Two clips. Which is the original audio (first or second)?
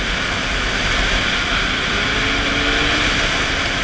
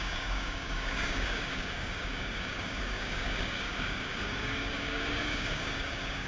first